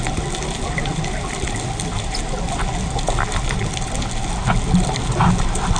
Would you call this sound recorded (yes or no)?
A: yes